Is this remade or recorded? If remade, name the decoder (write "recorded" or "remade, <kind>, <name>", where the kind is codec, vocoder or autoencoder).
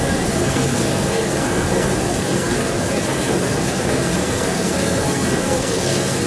remade, codec, SNAC